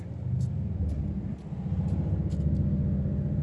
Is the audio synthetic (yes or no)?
no